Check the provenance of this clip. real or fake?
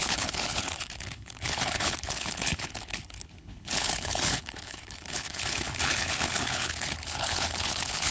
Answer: fake